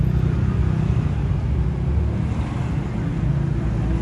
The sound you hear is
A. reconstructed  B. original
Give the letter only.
B